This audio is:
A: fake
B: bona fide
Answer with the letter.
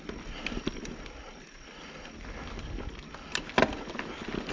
B